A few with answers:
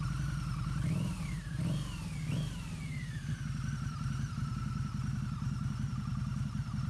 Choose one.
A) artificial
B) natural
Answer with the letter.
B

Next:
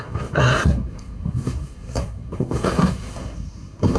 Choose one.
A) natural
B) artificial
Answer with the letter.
B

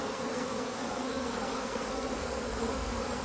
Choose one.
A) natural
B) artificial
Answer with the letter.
B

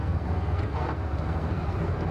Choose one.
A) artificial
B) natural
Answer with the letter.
A